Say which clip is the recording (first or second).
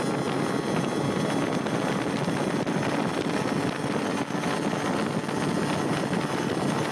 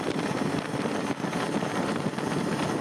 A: first